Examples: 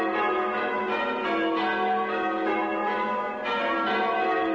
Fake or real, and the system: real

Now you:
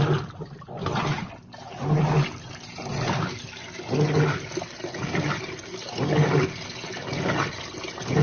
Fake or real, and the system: real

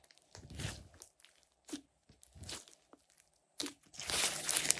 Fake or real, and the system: real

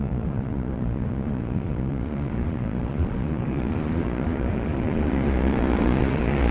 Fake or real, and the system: fake, vocoder, Vocos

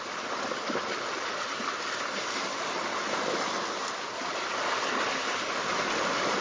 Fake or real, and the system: real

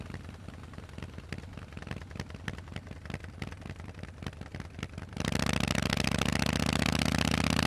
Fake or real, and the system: real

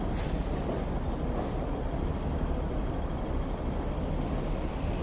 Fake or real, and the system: real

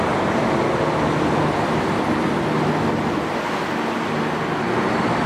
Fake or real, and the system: real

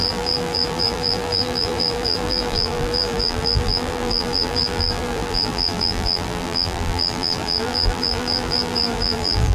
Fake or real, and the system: fake, vocoder, BigVGAN v2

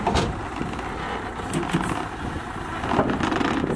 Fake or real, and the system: real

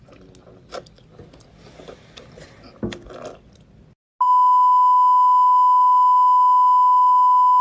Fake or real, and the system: real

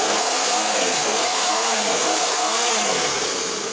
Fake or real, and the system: fake, codec, SNAC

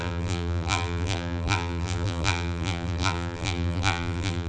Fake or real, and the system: fake, vocoder, BigVGAN v2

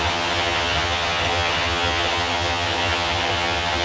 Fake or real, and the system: fake, vocoder, HiFi-GAN